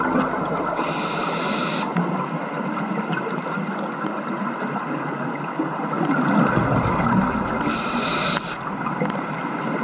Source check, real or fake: real